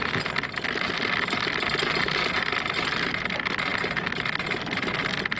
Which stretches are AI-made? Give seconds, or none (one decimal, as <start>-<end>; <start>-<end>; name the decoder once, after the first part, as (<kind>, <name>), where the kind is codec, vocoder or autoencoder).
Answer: none